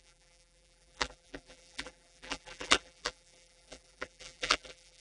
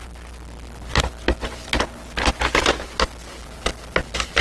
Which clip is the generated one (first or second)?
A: first